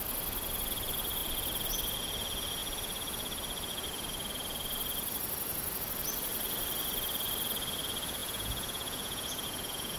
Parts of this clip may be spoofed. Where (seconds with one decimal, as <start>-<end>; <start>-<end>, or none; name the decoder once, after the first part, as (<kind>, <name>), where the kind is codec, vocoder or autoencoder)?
8.2-10.0 (vocoder, Vocos)